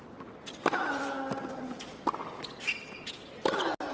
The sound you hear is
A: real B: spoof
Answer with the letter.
A